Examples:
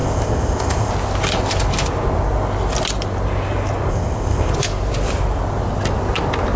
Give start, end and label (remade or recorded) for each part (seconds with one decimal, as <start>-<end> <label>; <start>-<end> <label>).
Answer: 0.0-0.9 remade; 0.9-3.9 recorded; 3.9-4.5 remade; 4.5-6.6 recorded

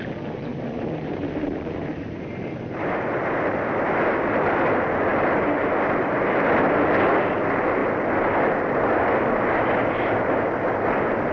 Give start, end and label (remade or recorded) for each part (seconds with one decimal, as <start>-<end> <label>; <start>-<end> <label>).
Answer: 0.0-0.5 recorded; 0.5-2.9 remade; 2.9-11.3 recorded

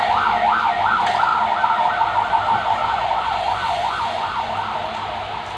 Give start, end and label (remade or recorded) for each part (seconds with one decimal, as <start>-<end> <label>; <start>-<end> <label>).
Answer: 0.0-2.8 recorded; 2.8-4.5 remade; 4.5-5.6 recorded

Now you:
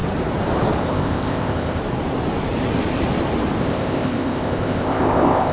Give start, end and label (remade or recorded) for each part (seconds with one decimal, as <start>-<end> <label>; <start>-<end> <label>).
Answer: 0.0-0.8 recorded; 0.8-1.8 remade; 1.8-3.6 recorded; 3.6-5.5 remade

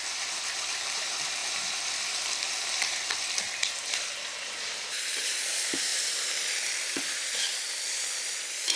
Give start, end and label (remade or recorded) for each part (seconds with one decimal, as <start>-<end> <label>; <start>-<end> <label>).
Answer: 0.0-8.8 remade

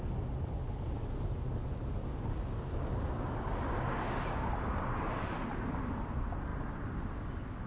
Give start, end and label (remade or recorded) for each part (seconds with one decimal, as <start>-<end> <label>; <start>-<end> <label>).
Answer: 0.0-2.0 recorded; 2.0-5.1 remade; 5.1-7.7 recorded

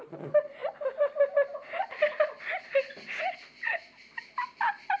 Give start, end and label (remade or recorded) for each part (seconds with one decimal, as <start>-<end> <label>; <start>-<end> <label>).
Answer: 0.0-5.0 recorded